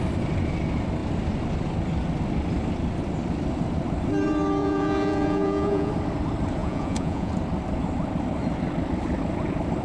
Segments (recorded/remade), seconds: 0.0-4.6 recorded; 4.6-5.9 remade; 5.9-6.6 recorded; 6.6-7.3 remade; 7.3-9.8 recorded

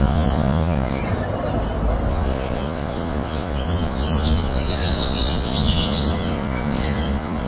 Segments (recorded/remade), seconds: 0.0-1.0 remade; 1.0-2.1 recorded; 2.1-7.5 remade

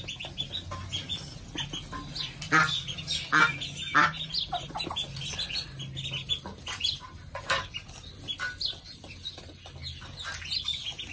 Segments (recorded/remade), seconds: 0.0-11.1 recorded

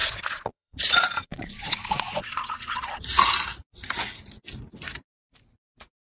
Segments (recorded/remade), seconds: 0.0-3.0 remade; 3.0-6.1 recorded

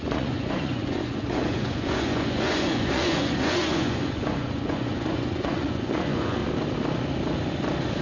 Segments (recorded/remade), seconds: 0.0-6.4 remade; 6.4-8.0 recorded

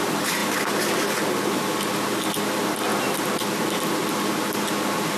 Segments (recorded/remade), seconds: 0.0-5.2 recorded

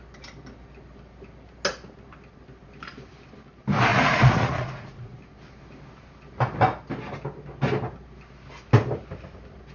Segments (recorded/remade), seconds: 0.0-3.9 recorded; 3.9-5.2 remade; 5.2-9.7 recorded

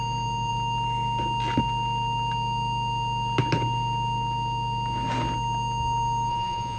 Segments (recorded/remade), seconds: 0.0-6.3 recorded; 6.3-6.8 remade